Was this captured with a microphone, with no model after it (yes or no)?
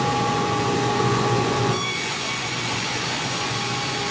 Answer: no